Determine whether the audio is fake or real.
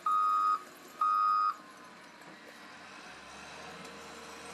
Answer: real